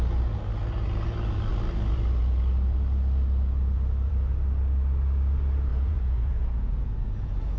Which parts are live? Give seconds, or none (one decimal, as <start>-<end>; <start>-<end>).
0.0-5.7